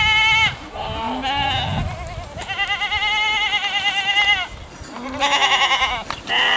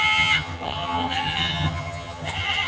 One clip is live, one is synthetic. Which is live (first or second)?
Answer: first